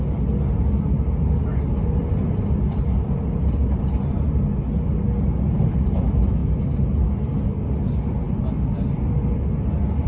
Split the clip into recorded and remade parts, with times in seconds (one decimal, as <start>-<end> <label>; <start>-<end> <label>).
0.0-10.1 recorded